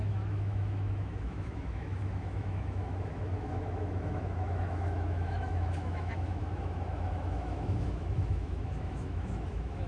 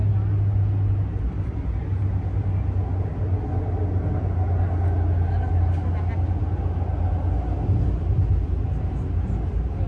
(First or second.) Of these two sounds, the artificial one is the first